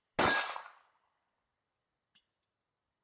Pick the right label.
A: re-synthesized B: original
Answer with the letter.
B